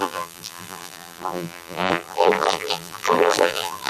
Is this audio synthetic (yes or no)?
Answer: yes